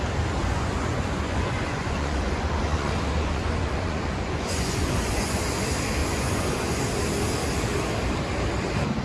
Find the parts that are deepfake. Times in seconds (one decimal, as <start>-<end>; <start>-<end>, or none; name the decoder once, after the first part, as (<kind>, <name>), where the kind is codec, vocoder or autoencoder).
0.4-5.4 (vocoder, Vocos); 6.0-6.8